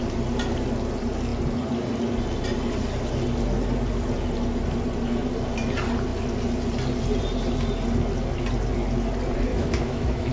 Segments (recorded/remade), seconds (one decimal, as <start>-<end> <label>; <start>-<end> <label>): 0.0-9.5 recorded; 9.5-10.3 remade